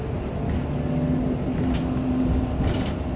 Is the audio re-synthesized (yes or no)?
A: no